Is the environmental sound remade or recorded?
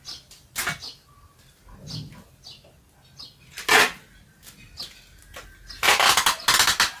recorded